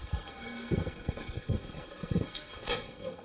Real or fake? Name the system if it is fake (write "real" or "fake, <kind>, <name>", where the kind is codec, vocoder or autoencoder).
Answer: fake, codec, SNAC